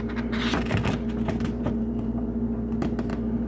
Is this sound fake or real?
real